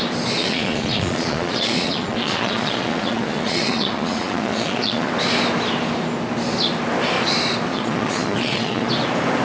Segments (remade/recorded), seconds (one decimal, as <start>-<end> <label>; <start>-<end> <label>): 0.0-0.4 recorded; 0.4-5.1 remade; 5.1-7.7 recorded; 7.7-8.9 remade; 8.9-9.4 recorded